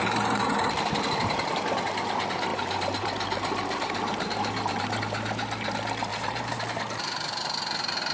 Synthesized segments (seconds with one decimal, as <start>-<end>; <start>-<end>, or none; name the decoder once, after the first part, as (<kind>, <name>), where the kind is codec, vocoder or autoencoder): 2.5-5.0 (vocoder, BigVGAN v2); 6.1-6.8